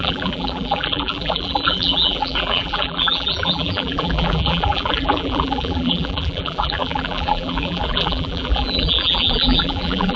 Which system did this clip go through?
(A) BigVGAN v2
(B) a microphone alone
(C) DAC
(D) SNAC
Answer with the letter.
A